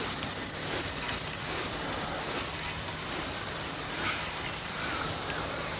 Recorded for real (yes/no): yes